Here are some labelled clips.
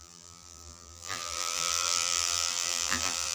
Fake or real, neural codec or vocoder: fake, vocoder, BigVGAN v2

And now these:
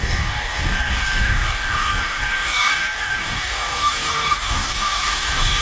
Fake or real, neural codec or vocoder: fake, codec, DAC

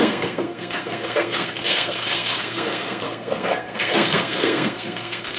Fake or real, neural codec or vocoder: fake, codec, SNAC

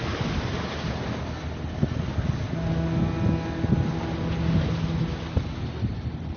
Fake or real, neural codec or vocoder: real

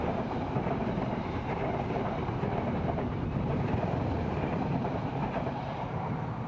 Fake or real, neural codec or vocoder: fake, vocoder, BigVGAN v2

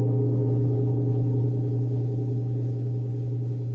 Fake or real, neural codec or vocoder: fake, codec, HILCodec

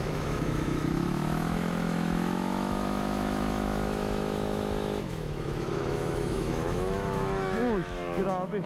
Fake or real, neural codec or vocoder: fake, autoencoder, DAC-VAE